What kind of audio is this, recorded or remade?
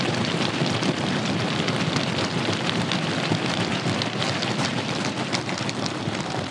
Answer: remade